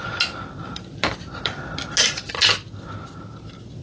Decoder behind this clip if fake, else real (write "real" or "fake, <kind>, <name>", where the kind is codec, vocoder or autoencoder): real